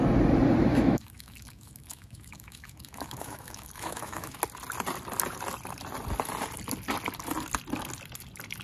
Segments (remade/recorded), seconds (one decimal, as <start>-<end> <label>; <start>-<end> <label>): 0.0-0.7 recorded; 0.7-4.4 remade; 4.4-8.6 recorded